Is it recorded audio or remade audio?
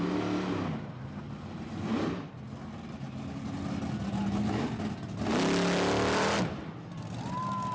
recorded